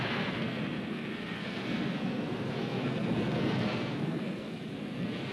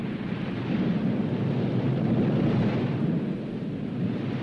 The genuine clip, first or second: second